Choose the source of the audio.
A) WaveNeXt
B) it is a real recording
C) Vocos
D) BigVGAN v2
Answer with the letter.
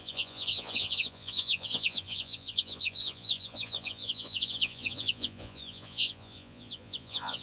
C